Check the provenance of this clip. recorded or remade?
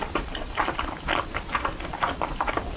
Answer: remade